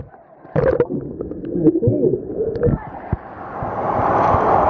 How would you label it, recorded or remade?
recorded